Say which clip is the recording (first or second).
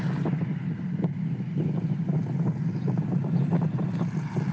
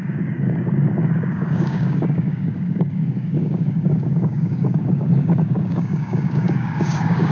first